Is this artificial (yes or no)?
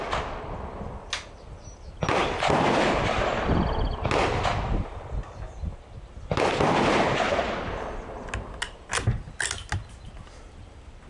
no